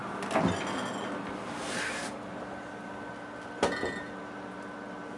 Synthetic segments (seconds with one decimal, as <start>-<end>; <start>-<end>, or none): none